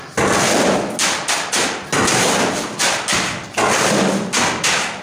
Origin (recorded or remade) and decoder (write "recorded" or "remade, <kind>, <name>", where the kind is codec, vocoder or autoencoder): recorded